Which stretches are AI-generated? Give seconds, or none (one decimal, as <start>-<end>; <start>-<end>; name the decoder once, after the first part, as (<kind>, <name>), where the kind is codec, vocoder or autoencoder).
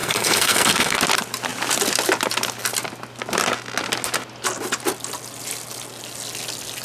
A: 0.0-1.0 (codec, SNAC)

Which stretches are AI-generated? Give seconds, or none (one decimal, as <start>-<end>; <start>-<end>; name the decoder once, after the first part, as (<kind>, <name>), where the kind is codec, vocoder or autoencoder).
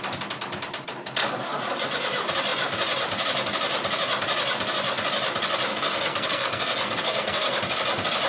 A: 5.7-7.6 (codec, SNAC)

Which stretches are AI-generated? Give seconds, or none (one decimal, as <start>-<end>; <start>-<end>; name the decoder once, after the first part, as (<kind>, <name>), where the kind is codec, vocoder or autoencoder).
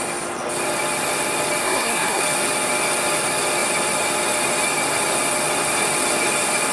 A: 1.6-2.2 (codec, SNAC)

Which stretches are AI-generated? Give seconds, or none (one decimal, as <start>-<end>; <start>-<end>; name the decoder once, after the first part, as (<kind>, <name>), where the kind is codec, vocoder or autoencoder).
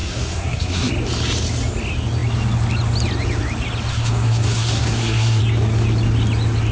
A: 0.0-0.9 (codec, SNAC); 3.9-5.4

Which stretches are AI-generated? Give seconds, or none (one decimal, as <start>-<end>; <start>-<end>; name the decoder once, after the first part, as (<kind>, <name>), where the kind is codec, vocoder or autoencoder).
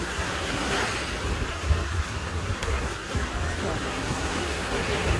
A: 0.0-0.8 (codec, SNAC); 1.5-3.3; 3.8-5.2